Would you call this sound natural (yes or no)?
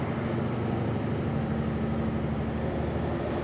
no